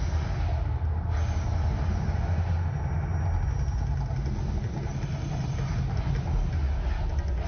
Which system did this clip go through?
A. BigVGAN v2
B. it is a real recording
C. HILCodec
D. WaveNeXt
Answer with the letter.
B